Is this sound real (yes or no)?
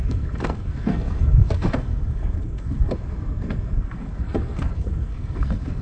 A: no